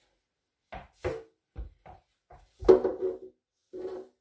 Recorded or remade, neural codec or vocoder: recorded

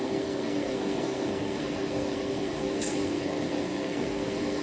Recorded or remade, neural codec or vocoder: remade, codec, SNAC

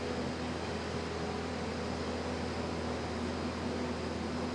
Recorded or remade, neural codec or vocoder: recorded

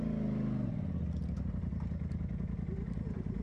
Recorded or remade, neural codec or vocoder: recorded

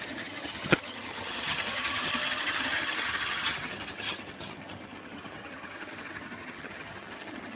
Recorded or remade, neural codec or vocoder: remade, vocoder, HiFi-GAN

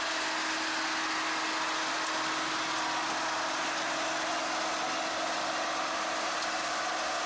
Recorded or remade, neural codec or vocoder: recorded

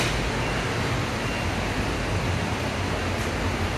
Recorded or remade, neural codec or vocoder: remade, vocoder, BigVGAN v2